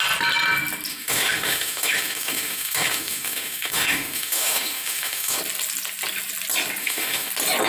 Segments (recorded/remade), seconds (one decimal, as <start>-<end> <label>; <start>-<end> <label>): 0.0-0.9 recorded; 0.9-5.4 remade; 5.4-6.8 recorded; 6.8-7.3 remade; 7.3-7.7 recorded